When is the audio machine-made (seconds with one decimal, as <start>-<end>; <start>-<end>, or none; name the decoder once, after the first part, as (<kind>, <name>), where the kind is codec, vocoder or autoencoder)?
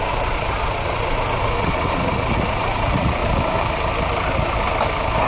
0.0-3.2 (vocoder, Vocos)